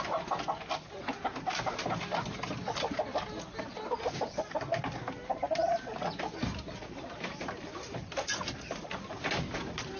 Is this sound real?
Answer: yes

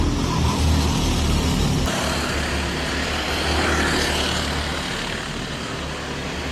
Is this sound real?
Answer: yes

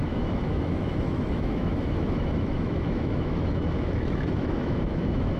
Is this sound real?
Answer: no